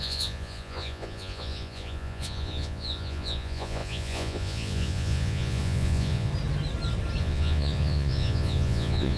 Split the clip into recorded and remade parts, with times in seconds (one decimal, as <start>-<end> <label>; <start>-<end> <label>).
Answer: 0.0-6.3 remade; 6.3-7.2 recorded; 7.2-9.2 remade